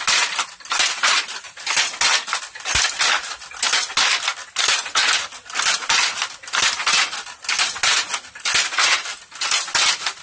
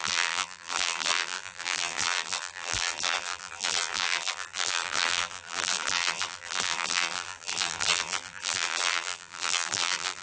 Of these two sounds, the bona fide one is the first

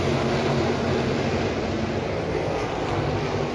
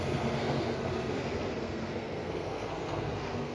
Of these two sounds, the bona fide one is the first